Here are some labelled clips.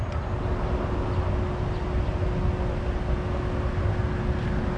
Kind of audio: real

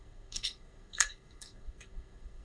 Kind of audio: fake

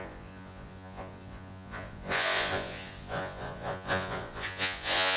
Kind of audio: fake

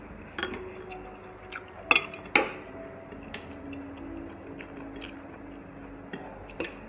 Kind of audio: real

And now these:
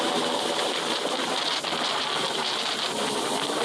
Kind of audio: real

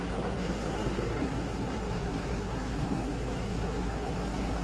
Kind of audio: fake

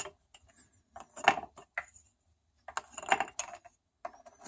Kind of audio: real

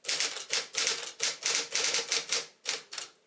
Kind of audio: real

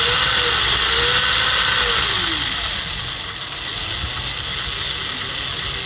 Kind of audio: real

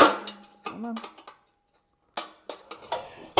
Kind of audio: real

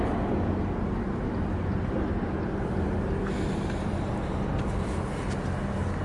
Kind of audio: real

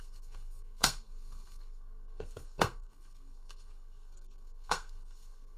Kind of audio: fake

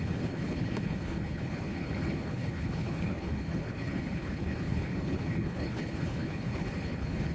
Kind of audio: fake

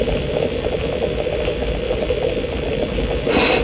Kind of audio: real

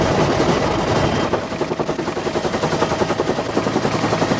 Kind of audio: real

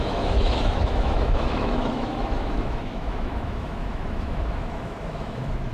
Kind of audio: fake